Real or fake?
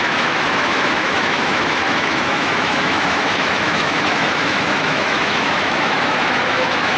fake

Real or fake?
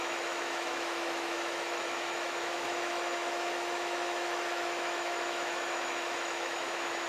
fake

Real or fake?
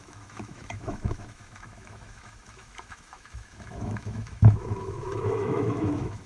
fake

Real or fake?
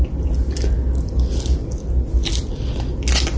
real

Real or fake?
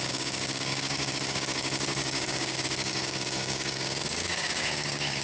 fake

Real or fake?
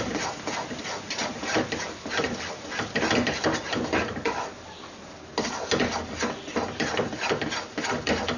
real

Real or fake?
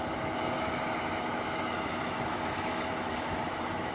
fake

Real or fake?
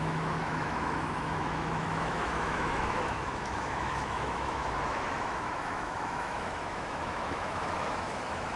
fake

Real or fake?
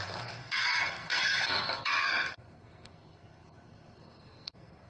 fake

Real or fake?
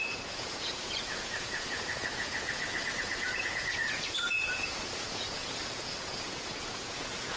fake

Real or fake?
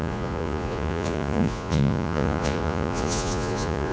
fake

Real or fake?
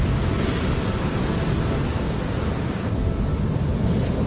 real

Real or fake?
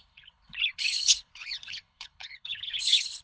fake